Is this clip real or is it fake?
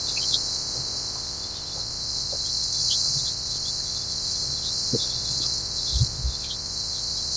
fake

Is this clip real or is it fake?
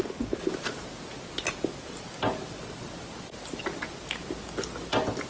real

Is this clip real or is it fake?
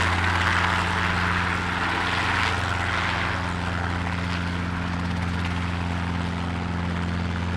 real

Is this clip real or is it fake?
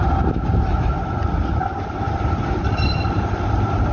real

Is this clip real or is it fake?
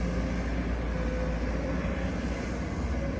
real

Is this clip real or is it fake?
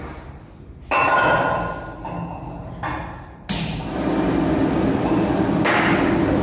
real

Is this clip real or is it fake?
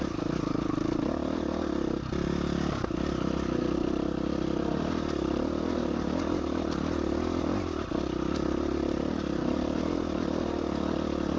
real